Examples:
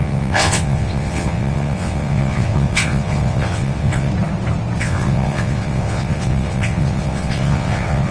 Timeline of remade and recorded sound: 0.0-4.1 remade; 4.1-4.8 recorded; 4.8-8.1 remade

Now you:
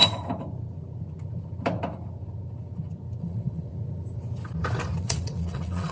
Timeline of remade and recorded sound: 0.0-3.2 recorded; 3.2-3.7 remade; 3.7-5.0 recorded; 5.0-5.9 remade